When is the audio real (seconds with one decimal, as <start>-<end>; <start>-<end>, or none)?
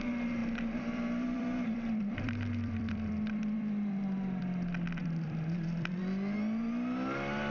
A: 0.0-0.4; 4.4-5.0; 6.0-7.5